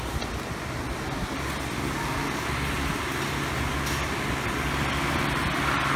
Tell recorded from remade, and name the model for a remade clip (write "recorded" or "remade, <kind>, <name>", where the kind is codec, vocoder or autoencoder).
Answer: recorded